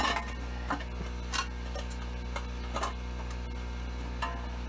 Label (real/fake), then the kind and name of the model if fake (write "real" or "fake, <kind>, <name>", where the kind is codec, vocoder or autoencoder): real